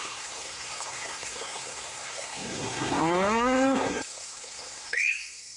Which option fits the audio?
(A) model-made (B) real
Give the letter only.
A